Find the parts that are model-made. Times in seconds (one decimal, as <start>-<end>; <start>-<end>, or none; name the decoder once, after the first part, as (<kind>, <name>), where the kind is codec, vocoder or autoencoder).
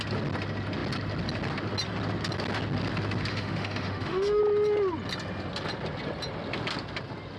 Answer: 3.3-4.4 (autoencoder, DAC-VAE)